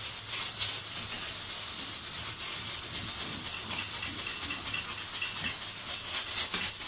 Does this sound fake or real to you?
real